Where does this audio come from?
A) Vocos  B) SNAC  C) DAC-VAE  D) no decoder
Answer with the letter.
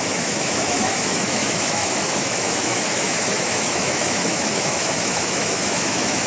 C